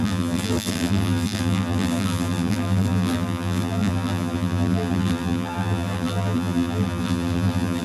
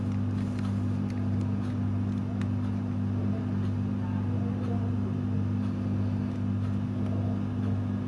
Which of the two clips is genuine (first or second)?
second